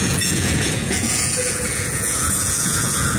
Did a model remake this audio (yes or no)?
yes